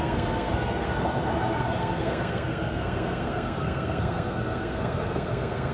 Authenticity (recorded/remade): remade